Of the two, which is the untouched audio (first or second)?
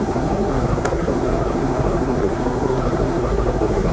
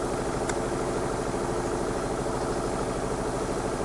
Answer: second